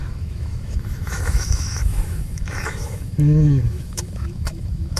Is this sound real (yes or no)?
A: no